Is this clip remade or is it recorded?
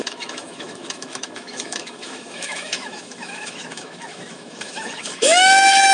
remade